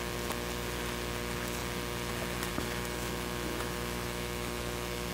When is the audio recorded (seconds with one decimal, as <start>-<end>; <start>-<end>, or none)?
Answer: 0.0-2.5